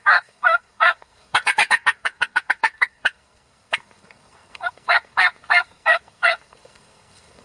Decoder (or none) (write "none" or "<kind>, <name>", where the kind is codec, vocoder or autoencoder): codec, SNAC